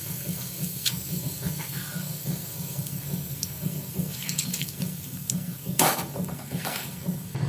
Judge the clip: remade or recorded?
remade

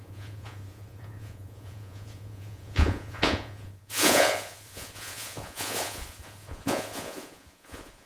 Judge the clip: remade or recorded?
remade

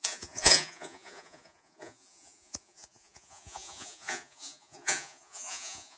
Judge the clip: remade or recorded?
remade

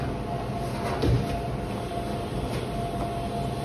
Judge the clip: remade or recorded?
recorded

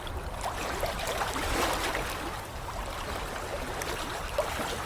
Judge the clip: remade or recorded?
recorded